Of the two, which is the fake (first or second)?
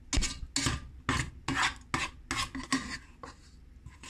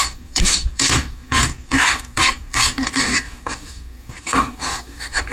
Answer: second